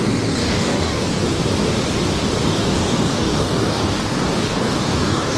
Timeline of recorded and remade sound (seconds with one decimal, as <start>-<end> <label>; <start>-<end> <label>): 0.0-1.2 remade; 1.2-2.5 recorded; 2.5-5.4 remade